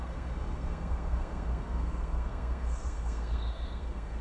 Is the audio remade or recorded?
remade